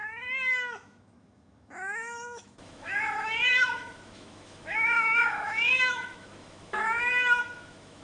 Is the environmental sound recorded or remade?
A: remade